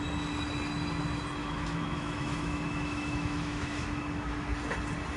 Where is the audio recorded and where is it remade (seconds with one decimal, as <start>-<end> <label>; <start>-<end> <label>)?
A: 0.0-1.4 recorded; 1.4-4.5 remade; 4.5-5.2 recorded